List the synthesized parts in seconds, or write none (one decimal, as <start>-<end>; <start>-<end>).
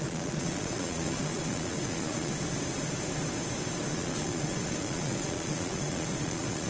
0.0-2.3; 3.9-6.7